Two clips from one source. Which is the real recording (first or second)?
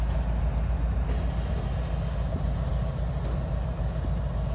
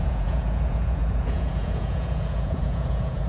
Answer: first